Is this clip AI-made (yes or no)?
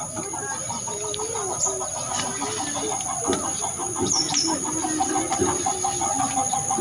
no